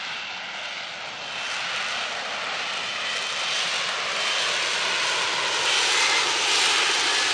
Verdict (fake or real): real